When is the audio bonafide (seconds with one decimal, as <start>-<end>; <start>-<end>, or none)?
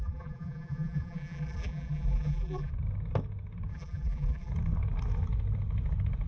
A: 2.7-3.7; 4.5-6.3